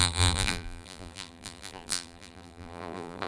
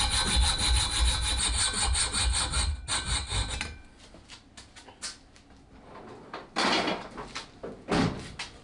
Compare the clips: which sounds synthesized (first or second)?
first